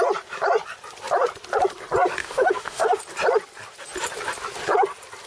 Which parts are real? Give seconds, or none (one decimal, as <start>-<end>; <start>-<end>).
0.0-2.2; 3.0-5.3